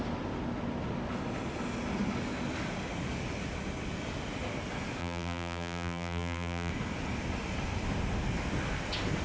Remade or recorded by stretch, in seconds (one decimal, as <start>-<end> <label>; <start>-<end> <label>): 0.0-5.0 recorded; 5.0-6.7 remade; 6.7-9.2 recorded